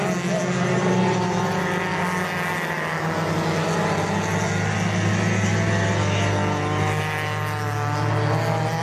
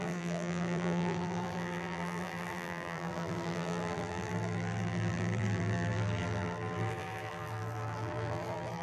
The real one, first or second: first